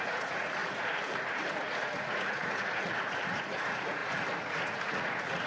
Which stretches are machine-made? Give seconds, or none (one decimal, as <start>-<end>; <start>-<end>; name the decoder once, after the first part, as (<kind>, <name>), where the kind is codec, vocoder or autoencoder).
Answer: 0.0-5.5 (vocoder, Vocos)